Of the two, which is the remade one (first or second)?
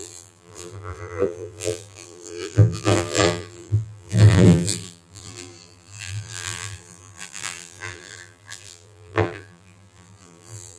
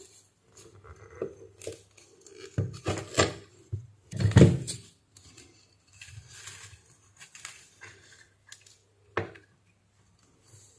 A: first